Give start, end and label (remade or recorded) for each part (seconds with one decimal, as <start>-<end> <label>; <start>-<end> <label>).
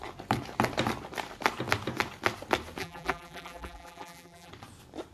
0.0-2.8 recorded; 2.8-4.5 remade; 4.5-5.1 recorded